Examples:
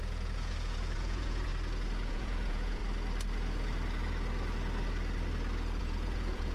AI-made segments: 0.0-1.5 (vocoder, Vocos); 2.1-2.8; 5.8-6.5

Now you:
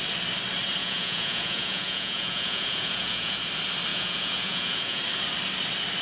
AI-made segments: 0.8-3.5 (vocoder, Vocos); 3.9-5.0

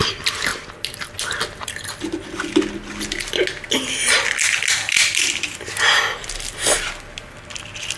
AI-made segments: none

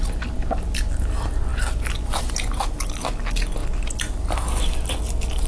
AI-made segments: none

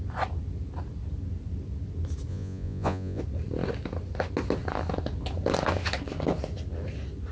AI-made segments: 2.3-3.2 (vocoder, Vocos)